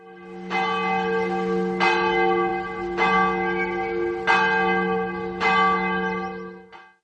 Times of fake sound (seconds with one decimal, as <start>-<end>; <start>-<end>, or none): none